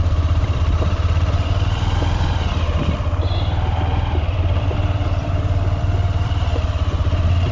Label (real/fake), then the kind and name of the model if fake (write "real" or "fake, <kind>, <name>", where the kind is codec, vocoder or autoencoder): fake, vocoder, BigVGAN v2